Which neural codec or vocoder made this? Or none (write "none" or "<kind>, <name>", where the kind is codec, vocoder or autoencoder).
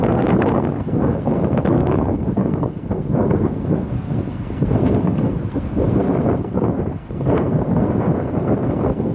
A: codec, SNAC